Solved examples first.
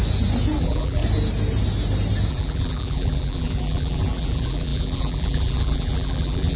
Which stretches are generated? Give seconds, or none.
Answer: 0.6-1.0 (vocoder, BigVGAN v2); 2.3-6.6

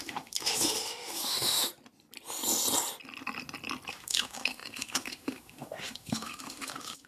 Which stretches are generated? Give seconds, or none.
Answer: 0.0-1.7 (autoencoder, DAC-VAE); 3.9-7.1

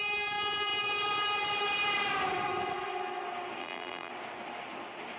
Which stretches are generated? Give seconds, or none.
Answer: 3.6-4.1 (vocoder, BigVGAN v2)

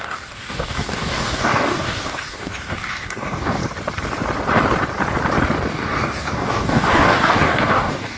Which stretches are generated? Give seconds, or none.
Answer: 0.0-3.6 (codec, DAC); 5.7-8.2